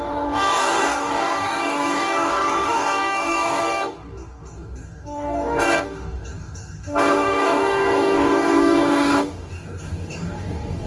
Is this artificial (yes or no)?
yes